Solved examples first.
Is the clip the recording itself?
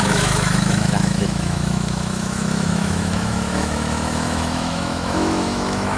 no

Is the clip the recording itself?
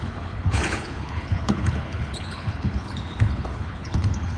no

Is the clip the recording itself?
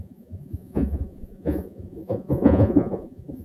no